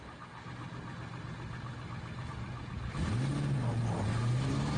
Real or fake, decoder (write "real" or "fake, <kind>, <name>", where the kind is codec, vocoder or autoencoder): real